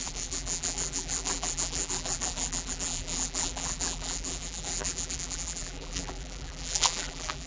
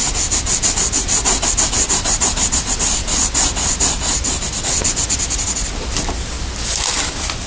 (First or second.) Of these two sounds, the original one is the second